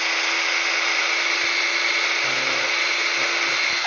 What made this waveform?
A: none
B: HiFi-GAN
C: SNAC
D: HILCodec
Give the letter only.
A